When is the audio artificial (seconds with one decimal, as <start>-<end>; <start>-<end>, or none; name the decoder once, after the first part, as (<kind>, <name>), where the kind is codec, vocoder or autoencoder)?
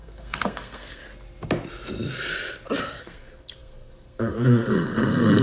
0.0-1.0 (codec, SNAC); 3.0-5.4